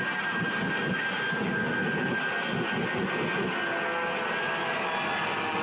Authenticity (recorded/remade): recorded